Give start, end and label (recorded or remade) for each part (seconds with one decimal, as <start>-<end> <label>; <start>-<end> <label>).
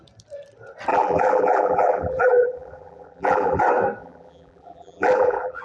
0.0-0.9 recorded; 0.9-3.6 remade; 3.6-4.0 recorded; 4.0-5.6 remade